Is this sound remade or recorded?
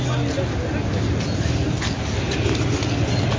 recorded